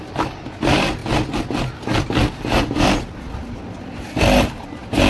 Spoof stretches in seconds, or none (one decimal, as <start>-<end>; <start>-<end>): none